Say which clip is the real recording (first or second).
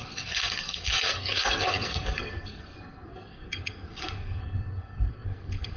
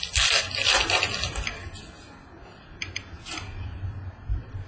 second